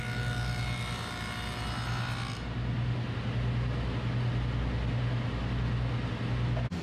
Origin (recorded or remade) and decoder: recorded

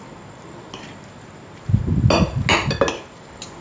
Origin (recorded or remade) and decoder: recorded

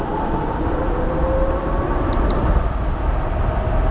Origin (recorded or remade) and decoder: recorded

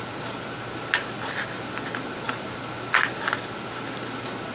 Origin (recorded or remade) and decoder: recorded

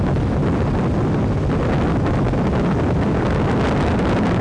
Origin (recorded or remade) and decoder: recorded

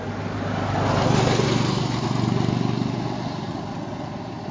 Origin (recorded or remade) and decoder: recorded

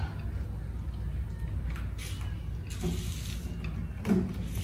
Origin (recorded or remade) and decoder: recorded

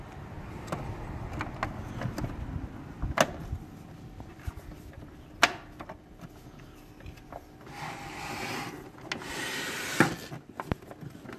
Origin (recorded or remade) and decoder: recorded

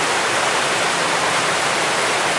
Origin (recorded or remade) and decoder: remade, vocoder, BigVGAN v2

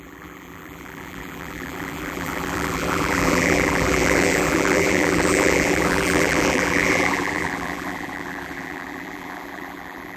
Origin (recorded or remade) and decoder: remade, vocoder, BigVGAN v2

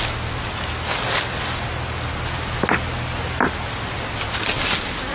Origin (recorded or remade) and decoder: recorded